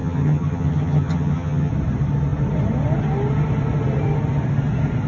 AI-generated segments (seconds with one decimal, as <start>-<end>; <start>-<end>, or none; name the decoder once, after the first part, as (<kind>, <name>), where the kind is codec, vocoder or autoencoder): 0.0-1.7 (vocoder, HiFi-GAN)